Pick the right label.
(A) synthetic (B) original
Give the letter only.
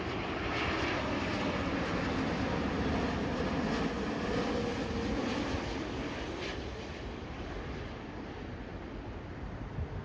B